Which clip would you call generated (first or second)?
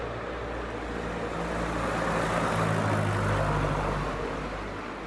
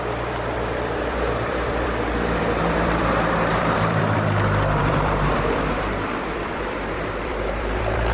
second